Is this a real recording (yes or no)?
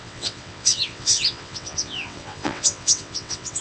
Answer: no